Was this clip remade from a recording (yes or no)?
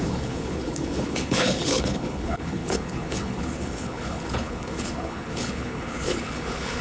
yes